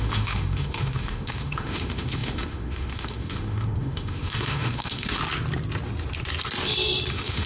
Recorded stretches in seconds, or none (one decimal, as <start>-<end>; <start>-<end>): 5.2-7.1